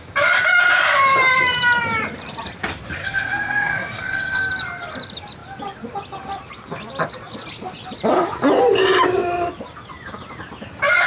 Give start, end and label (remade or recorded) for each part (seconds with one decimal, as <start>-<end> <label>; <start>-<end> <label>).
0.0-3.0 recorded; 3.0-4.5 remade; 4.5-11.1 recorded